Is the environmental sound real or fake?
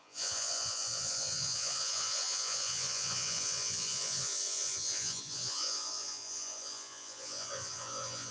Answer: fake